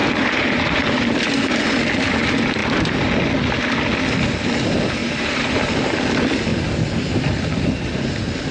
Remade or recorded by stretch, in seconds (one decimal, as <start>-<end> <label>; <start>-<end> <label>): 0.0-1.0 remade; 1.0-5.0 recorded; 5.0-6.0 remade; 6.0-8.5 recorded